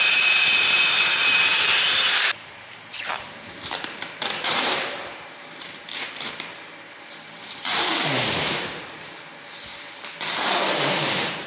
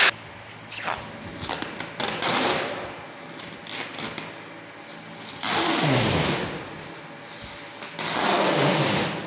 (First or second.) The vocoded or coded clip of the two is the first